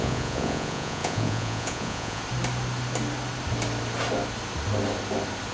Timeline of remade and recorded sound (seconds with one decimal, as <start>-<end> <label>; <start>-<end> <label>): 0.0-2.2 remade; 2.2-5.5 recorded